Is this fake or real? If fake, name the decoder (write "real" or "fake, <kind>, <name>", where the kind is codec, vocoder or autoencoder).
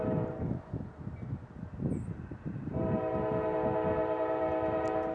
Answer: real